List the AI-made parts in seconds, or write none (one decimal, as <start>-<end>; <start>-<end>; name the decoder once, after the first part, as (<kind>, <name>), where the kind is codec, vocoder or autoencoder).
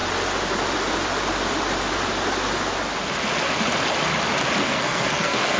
4.6-5.6 (codec, SNAC)